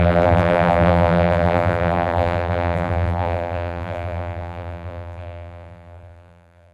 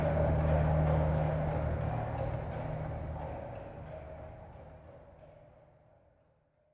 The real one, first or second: second